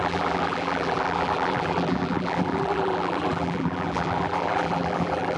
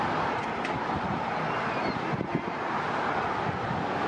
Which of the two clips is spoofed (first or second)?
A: first